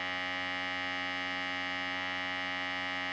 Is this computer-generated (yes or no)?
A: no